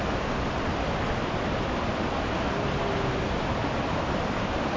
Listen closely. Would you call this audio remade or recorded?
recorded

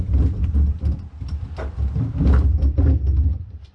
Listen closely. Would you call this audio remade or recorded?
remade